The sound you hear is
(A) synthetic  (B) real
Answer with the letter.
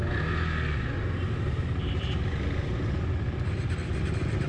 B